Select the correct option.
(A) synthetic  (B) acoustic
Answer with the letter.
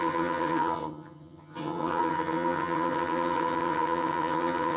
A